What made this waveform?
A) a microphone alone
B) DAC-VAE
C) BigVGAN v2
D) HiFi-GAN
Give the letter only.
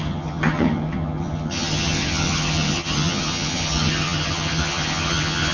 D